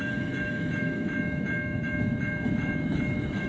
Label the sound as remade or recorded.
remade